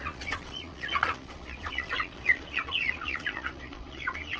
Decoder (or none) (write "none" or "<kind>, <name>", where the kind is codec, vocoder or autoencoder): vocoder, Vocos